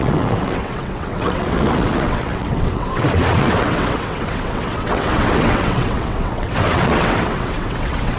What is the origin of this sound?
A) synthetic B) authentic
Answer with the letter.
A